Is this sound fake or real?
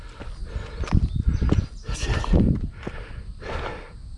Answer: real